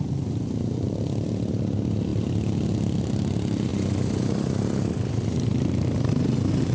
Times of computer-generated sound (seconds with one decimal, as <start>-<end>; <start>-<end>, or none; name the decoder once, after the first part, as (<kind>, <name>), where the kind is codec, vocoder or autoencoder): none